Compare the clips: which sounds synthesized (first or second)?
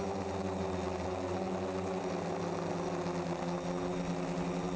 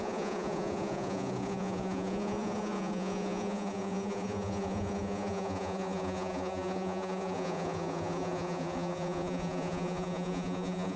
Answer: second